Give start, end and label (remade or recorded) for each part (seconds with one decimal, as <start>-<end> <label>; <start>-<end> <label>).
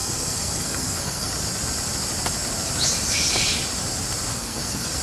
0.0-1.3 remade; 1.3-4.3 recorded; 4.3-5.0 remade